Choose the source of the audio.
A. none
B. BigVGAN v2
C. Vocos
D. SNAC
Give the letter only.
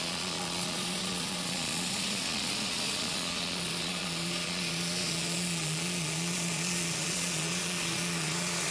C